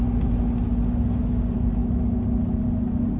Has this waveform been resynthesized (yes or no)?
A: no